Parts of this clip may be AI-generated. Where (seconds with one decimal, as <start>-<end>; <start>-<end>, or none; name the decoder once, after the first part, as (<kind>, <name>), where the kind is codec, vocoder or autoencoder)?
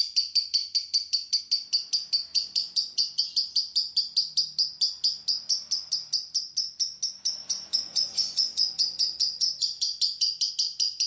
2.3-3.2 (vocoder, Vocos); 7.4-10.5